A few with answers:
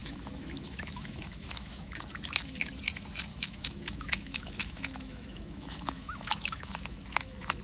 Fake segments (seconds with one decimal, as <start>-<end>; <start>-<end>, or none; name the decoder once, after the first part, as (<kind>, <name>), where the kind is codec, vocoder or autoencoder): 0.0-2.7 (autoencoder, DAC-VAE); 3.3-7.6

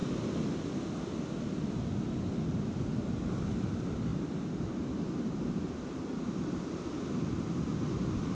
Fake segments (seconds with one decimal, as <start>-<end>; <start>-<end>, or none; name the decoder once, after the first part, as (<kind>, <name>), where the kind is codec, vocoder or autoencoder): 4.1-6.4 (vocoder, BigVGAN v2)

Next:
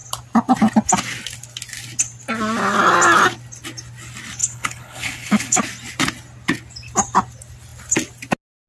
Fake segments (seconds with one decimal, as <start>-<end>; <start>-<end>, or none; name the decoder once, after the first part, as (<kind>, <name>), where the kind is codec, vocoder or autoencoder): 4.4-5.6 (codec, HILCodec)